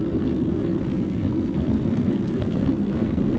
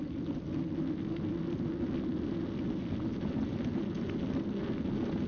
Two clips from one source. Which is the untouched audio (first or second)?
second